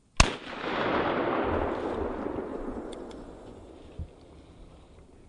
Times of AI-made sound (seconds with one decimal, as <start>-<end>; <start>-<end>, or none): 2.5-3.7